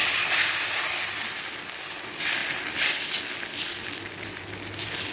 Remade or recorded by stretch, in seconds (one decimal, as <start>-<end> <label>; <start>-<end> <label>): 0.0-5.1 recorded